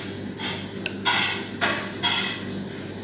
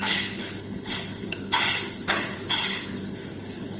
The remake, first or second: second